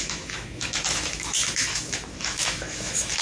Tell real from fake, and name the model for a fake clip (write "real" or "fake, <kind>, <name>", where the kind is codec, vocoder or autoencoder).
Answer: fake, autoencoder, DAC-VAE